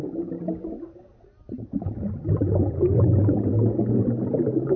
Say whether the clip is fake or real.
real